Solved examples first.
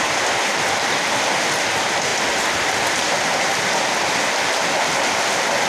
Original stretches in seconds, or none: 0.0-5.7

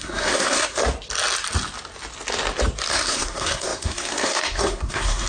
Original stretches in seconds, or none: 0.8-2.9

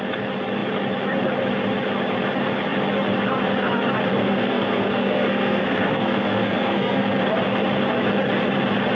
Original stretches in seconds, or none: 0.0-4.2; 7.2-8.9

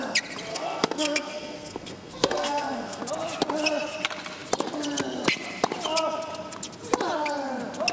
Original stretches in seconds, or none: 0.0-0.5; 3.0-7.9